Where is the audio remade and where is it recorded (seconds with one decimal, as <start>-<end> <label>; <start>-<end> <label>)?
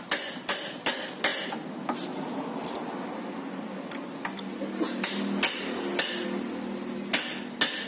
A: 0.0-7.9 recorded